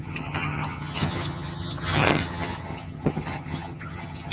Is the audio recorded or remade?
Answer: remade